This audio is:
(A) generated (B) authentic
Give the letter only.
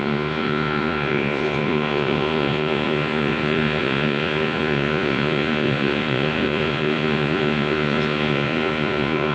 A